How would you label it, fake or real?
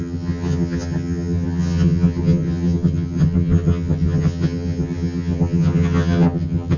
fake